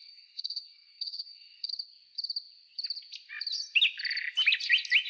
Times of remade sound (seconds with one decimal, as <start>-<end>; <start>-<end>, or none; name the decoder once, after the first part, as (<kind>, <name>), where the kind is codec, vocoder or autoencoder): 0.0-1.7 (codec, SNAC)